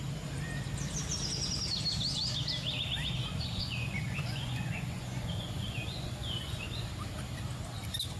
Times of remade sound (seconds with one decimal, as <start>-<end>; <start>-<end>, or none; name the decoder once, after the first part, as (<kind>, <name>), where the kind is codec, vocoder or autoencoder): 3.2-6.9 (vocoder, Vocos)